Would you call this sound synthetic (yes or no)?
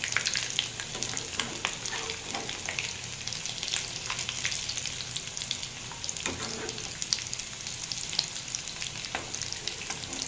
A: no